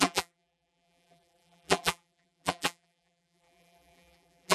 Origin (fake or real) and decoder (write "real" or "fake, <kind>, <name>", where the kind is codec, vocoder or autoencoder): fake, vocoder, BigVGAN v2